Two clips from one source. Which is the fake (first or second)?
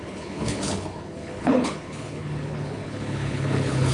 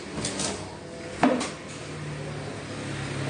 first